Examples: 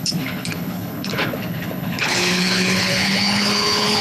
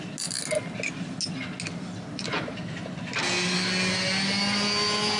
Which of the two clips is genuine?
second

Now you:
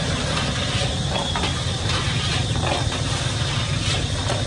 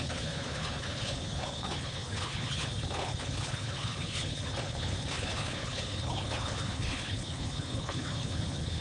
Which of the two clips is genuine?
first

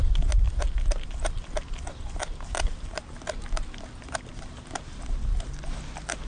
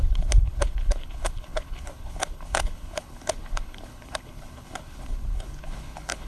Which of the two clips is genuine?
first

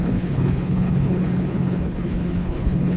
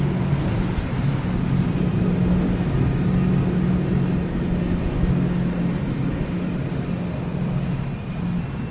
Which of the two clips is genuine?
second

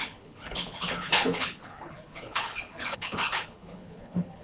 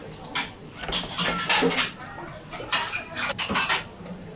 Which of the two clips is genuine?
second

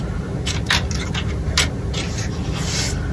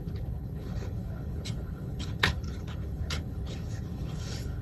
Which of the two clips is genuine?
first